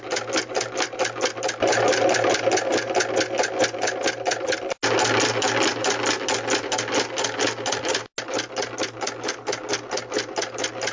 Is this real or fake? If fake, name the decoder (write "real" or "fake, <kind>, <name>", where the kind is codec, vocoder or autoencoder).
real